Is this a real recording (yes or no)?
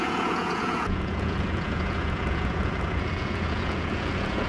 no